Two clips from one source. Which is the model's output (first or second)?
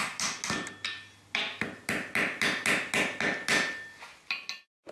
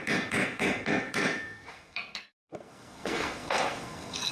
second